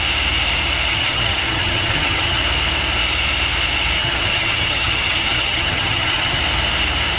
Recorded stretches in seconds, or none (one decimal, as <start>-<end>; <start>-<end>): 0.0-0.9; 2.4-4.0; 6.4-7.2